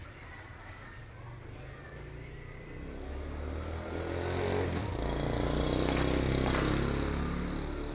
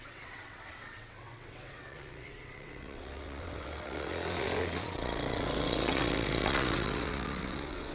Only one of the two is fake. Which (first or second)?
second